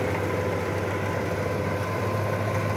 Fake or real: real